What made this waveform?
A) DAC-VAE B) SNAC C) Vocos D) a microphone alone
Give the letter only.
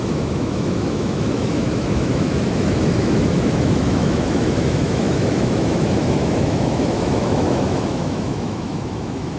A